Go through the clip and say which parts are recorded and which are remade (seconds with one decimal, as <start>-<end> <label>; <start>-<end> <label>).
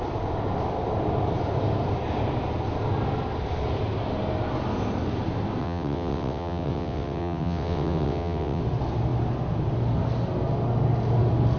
0.0-5.6 recorded; 5.6-8.6 remade; 8.6-11.6 recorded